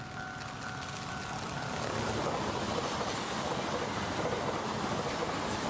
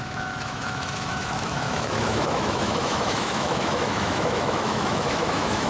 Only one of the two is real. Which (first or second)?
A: first